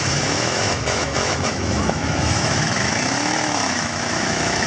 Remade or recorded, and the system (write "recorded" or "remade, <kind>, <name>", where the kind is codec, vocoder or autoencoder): remade, autoencoder, DAC-VAE